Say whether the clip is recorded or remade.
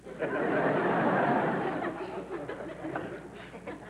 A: recorded